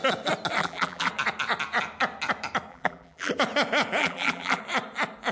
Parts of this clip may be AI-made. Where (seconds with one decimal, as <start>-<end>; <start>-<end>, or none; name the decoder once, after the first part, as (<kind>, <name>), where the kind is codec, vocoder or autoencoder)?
0.6-1.1 (vocoder, BigVGAN v2); 2.7-3.3; 4.0-4.6